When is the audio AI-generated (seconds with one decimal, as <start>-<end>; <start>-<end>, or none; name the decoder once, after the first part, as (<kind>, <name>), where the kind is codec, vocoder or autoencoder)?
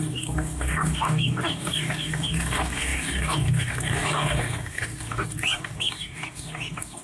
0.0-7.0 (codec, DAC)